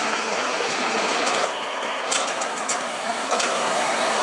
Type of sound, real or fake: fake